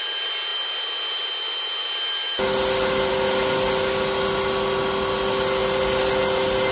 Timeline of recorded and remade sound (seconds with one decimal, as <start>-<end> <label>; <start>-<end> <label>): 0.0-6.7 recorded